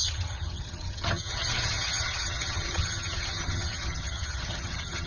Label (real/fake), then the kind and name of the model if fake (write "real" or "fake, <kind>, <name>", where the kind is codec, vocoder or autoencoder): fake, vocoder, HiFi-GAN